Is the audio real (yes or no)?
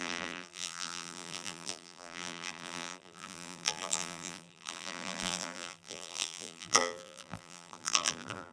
no